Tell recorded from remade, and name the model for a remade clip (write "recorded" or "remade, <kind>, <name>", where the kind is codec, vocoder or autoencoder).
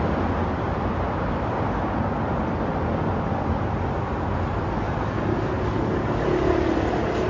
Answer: recorded